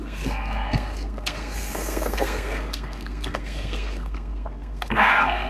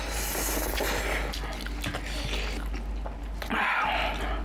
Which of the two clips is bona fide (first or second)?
second